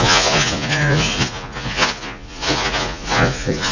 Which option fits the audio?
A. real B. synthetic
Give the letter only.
B